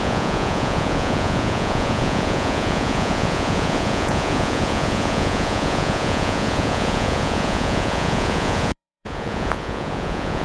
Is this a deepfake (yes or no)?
yes